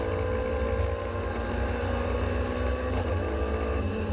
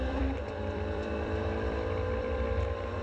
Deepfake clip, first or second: second